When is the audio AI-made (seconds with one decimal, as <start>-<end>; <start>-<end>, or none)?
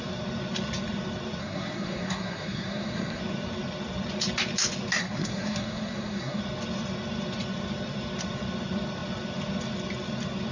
1.4-3.2; 5.0-6.4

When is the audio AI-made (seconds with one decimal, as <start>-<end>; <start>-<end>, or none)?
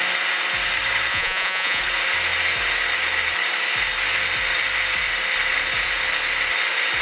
1.1-1.8